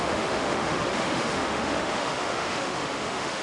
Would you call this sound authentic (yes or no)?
no